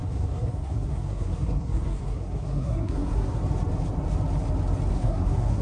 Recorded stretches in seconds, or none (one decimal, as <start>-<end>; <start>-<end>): 3.4-4.9